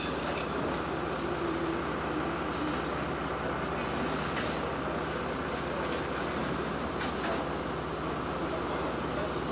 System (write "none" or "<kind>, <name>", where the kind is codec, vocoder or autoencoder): none